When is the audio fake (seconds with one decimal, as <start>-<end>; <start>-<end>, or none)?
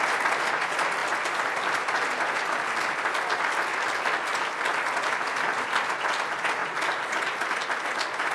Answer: none